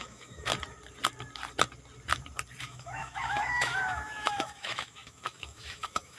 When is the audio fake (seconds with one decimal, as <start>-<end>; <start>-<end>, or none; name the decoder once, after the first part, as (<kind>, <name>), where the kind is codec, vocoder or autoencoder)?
0.0-0.5 (autoencoder, DAC-VAE); 2.6-6.2